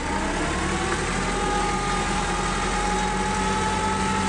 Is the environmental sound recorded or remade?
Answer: recorded